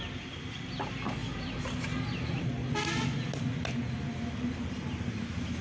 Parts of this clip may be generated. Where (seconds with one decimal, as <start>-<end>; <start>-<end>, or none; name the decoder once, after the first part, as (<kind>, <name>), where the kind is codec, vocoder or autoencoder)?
none